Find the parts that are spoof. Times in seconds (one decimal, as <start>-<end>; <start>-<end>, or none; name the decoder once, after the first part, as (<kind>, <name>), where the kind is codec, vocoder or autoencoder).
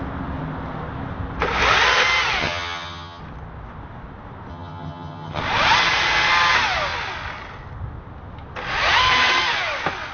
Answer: 2.4-3.2 (vocoder, HiFi-GAN); 4.5-5.4